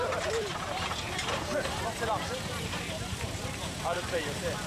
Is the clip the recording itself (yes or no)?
no